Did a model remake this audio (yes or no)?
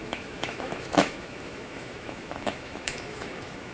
yes